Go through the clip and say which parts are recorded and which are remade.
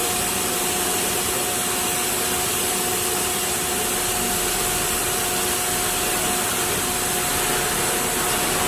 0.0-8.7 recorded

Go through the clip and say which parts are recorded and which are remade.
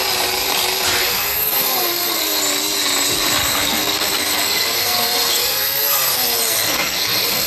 0.0-1.0 recorded; 1.0-2.4 remade; 2.4-3.4 recorded; 3.4-7.5 remade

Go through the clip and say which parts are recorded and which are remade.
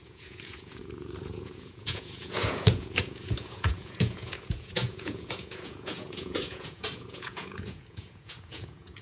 0.0-9.0 remade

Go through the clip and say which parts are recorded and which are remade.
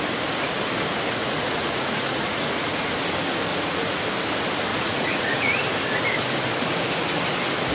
0.0-1.2 recorded; 1.2-2.9 remade; 2.9-3.5 recorded; 3.5-4.0 remade; 4.0-4.7 recorded; 4.7-5.6 remade; 5.6-7.7 recorded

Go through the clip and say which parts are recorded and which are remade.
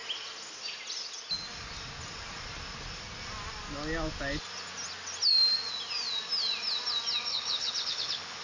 0.0-7.3 recorded; 7.3-8.4 remade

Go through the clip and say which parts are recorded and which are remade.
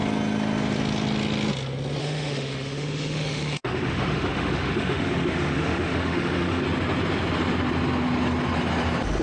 0.0-2.0 recorded; 2.0-6.6 remade; 6.6-9.2 recorded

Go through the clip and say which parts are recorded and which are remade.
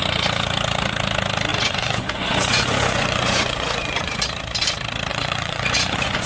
0.0-1.5 recorded; 1.5-4.2 remade; 4.2-5.1 recorded; 5.1-6.3 remade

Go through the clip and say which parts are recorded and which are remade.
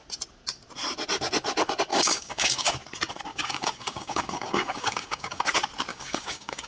0.0-1.9 recorded; 1.9-2.7 remade; 2.7-3.3 recorded; 3.3-5.4 remade; 5.4-5.9 recorded; 5.9-6.7 remade